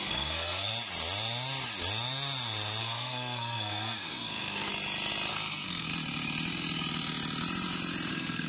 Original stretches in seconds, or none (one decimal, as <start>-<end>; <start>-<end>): 0.7-2.8; 4.7-5.3; 5.9-8.1